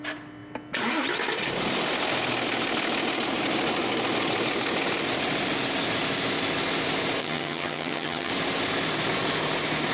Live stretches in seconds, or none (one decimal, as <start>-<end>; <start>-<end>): 0.0-7.2; 8.3-9.9